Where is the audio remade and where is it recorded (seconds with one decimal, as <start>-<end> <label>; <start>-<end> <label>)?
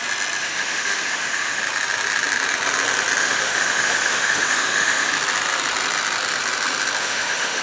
0.0-0.4 recorded; 0.4-1.6 remade; 1.6-3.2 recorded; 3.2-5.1 remade; 5.1-7.0 recorded; 7.0-7.6 remade